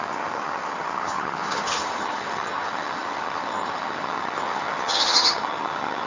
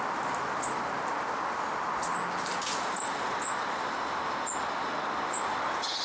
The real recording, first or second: second